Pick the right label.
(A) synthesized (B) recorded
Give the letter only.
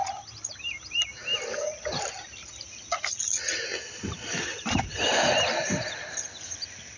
B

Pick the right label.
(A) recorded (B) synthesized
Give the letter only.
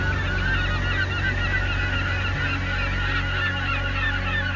A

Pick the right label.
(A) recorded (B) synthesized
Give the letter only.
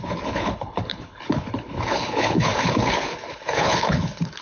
B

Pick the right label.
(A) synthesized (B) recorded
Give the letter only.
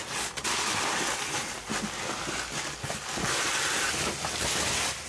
B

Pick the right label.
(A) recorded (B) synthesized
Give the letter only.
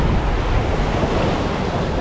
A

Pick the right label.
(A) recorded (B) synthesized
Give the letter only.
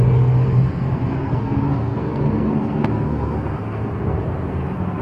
B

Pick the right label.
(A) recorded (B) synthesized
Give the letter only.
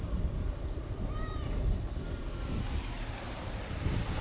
A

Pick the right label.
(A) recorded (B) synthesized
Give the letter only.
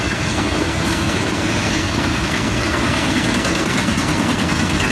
B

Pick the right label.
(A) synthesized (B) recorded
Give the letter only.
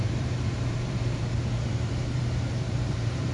A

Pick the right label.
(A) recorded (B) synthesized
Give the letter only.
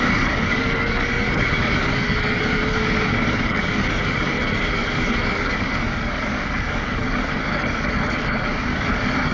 B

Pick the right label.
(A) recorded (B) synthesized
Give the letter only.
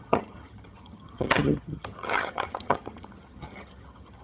B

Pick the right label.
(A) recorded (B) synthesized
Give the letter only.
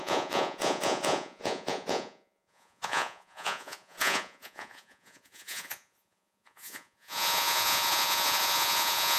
B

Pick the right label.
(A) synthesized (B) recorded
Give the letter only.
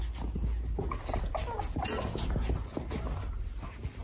B